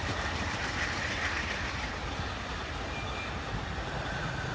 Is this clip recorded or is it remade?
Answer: recorded